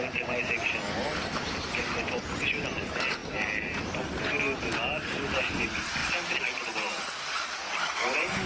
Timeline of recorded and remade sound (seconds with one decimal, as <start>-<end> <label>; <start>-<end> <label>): 0.0-8.5 recorded